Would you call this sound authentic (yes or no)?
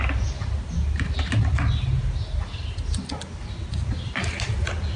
yes